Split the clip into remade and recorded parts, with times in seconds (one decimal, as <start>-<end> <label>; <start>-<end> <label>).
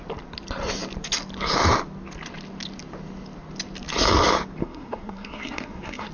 0.0-4.6 recorded; 4.6-6.1 remade